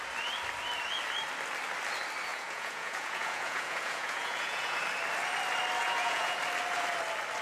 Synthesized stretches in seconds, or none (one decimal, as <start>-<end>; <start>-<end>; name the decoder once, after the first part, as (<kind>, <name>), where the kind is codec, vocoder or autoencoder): 2.3-4.8 (vocoder, Vocos); 5.8-6.4